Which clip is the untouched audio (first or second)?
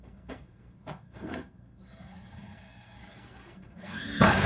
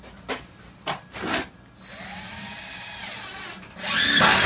second